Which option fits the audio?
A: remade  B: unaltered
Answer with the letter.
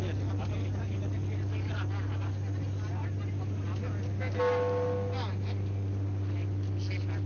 B